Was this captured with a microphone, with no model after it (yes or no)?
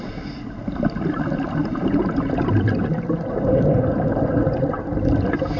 yes